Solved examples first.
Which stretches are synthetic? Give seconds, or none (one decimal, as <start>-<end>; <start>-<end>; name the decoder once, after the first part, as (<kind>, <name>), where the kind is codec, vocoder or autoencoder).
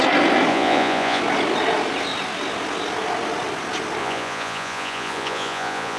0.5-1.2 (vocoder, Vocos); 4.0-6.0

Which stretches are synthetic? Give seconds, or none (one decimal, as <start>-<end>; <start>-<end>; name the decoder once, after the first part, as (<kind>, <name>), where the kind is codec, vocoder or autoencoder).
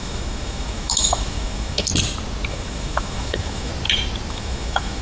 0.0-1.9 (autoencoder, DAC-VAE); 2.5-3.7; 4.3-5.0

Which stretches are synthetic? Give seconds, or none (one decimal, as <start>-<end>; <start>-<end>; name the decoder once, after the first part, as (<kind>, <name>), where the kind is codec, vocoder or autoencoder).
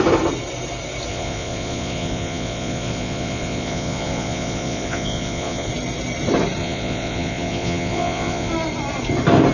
1.1-5.7 (vocoder, Vocos); 6.6-8.5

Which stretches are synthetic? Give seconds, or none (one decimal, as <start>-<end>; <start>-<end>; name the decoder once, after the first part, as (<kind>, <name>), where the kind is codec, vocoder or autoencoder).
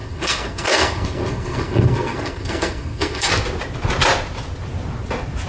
0.0-3.3 (codec, SNAC)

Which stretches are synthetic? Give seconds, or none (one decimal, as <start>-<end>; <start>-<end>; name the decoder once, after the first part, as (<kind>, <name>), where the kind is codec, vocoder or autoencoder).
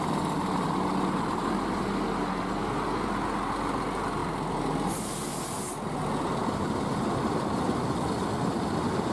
none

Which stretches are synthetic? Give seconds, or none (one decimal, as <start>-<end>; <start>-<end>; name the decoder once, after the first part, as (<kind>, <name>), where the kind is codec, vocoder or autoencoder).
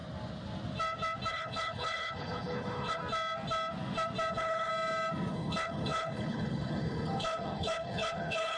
1.3-3.0 (codec, HILCodec); 4.3-4.7; 5.3-8.6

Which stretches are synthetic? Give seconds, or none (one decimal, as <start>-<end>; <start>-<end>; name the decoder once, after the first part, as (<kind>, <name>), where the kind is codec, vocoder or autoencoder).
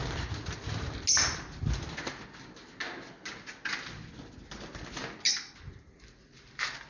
5.3-6.5 (vocoder, BigVGAN v2)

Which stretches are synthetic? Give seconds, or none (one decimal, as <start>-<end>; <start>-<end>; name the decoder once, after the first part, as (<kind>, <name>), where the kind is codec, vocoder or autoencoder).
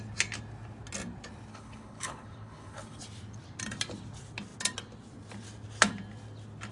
1.5-3.0 (codec, HILCodec)